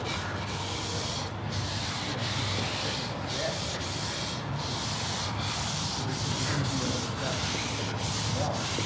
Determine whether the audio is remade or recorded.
recorded